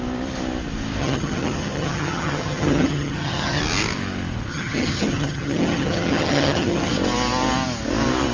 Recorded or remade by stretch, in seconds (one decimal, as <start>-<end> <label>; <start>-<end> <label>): 0.0-1.0 recorded; 1.0-3.6 remade; 3.6-4.5 recorded; 4.5-6.9 remade; 6.9-8.3 recorded